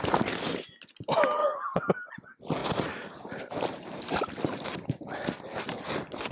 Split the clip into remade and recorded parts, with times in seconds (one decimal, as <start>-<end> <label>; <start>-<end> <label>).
0.0-2.6 recorded; 2.6-5.4 remade; 5.4-6.3 recorded